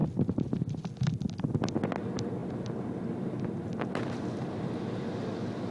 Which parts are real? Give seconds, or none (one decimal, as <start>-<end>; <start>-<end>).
0.0-5.7